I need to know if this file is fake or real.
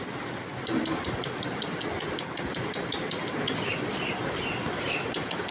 real